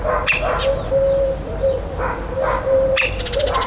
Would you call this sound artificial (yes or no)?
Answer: yes